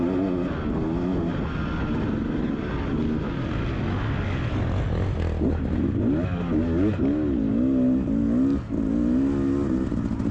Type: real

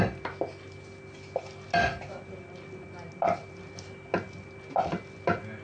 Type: real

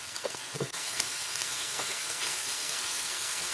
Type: fake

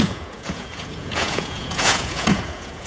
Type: fake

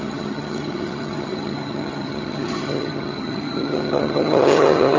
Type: fake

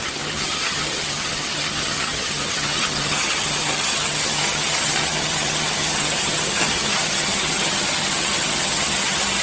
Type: fake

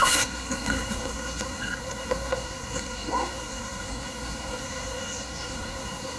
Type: fake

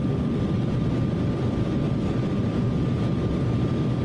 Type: fake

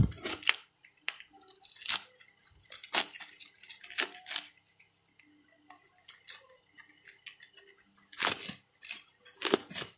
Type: real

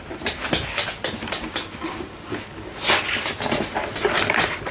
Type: real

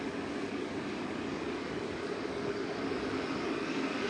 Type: fake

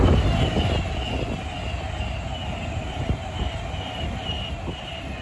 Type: real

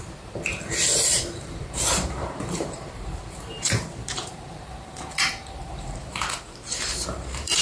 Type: fake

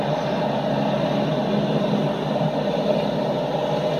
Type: real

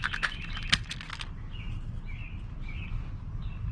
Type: real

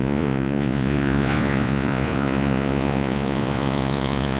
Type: fake